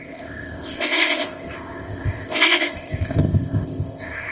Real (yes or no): no